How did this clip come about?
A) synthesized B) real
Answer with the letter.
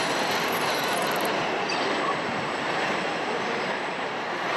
A